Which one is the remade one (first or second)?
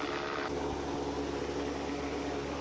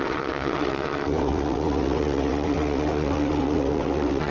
second